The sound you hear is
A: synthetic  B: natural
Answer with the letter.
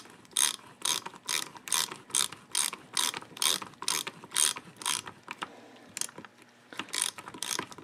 B